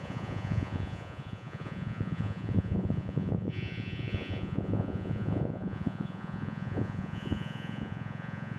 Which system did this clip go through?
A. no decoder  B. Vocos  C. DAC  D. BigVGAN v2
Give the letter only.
B